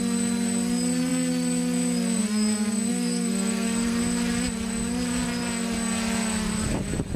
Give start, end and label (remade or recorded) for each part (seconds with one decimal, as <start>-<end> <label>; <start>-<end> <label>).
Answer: 0.0-2.9 recorded; 2.9-4.0 remade; 4.0-7.2 recorded